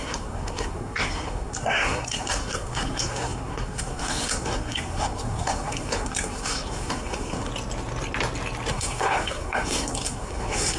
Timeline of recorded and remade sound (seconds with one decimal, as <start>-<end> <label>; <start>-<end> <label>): 0.0-7.5 remade; 7.5-8.7 recorded; 8.7-10.8 remade

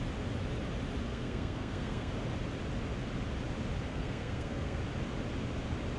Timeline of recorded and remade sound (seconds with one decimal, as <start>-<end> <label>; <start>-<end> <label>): 0.0-1.1 recorded; 1.1-2.1 remade; 2.1-3.9 recorded; 3.9-4.8 remade; 4.8-6.0 recorded

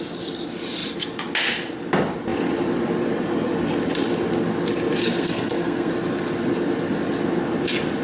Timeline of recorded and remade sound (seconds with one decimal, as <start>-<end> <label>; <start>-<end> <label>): 0.0-5.0 recorded; 5.0-5.9 remade; 5.9-8.0 recorded

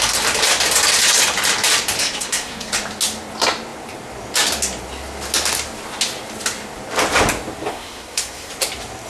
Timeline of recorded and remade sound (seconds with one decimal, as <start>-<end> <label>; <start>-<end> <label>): 0.0-2.0 recorded; 2.0-2.7 remade; 2.7-7.7 recorded; 7.7-8.5 remade; 8.5-9.1 recorded

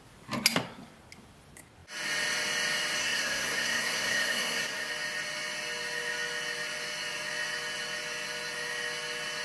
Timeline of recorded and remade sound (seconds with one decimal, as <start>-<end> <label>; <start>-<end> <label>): 0.0-3.0 recorded; 3.0-4.9 remade; 4.9-9.4 recorded

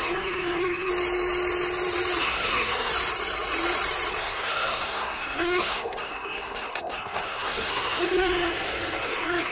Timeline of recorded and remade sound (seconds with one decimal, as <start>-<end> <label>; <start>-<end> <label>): 0.0-0.9 remade; 0.9-2.2 recorded; 2.2-2.9 remade; 2.9-4.2 recorded; 4.2-9.5 remade